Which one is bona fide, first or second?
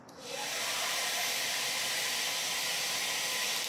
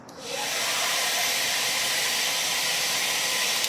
first